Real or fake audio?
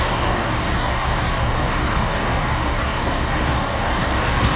fake